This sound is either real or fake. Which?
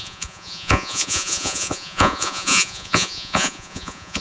fake